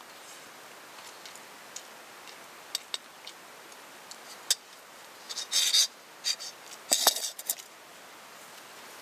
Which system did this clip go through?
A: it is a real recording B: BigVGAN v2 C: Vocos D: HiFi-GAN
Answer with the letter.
A